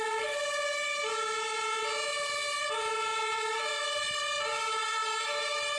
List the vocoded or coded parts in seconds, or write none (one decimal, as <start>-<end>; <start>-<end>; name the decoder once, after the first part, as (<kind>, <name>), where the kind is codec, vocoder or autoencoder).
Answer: none